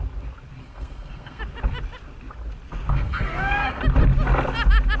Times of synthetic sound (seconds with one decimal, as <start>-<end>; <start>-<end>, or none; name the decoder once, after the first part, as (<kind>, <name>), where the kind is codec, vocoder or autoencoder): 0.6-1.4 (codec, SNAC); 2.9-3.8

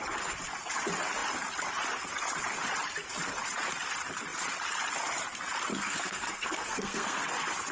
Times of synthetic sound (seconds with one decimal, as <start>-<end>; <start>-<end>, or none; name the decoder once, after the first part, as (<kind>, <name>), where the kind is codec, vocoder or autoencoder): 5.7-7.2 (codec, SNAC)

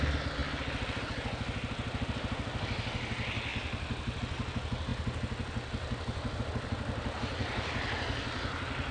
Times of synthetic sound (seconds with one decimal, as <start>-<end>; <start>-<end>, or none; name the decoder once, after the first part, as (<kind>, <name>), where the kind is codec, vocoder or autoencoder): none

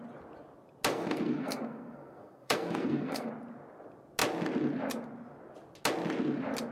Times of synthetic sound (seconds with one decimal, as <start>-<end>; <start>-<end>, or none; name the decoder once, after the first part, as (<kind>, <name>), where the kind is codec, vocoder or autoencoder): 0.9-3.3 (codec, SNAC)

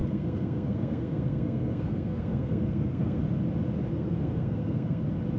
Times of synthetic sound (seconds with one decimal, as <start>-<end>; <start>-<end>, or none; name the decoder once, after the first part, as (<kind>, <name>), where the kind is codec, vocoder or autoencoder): 0.0-3.2 (codec, SNAC); 3.9-5.0

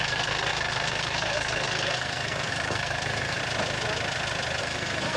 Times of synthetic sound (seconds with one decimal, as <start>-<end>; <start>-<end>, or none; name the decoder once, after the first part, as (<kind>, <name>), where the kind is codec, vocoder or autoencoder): 0.0-3.4 (codec, SNAC); 4.6-5.2

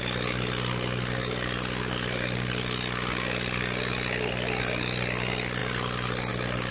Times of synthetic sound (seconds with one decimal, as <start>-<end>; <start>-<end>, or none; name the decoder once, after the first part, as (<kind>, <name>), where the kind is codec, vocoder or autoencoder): none

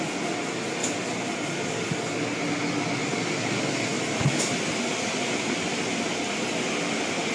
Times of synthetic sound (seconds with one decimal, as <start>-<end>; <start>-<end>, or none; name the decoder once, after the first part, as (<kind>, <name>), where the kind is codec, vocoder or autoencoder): none